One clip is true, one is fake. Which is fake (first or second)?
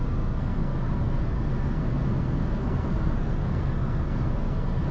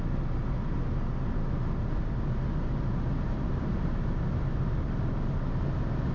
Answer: first